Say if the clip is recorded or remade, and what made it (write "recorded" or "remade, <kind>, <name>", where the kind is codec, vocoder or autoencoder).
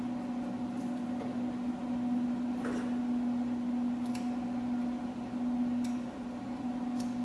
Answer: recorded